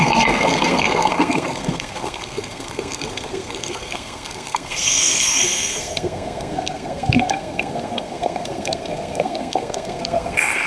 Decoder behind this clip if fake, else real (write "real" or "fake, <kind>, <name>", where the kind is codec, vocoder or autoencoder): fake, codec, SNAC